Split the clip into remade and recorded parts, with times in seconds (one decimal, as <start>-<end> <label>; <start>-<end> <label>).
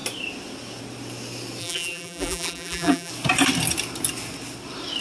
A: 0.0-1.6 recorded; 1.6-3.1 remade; 3.1-5.0 recorded